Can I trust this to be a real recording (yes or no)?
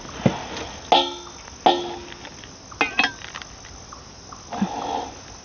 yes